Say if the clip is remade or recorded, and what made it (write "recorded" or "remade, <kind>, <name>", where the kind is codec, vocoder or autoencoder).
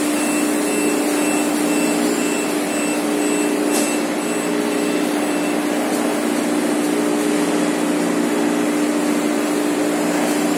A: recorded